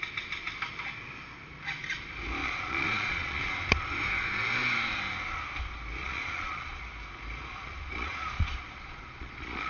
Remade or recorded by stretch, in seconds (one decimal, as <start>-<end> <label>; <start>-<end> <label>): 0.0-2.4 recorded; 2.4-3.5 remade; 3.5-6.0 recorded; 6.0-6.8 remade; 6.8-7.5 recorded; 7.5-9.7 remade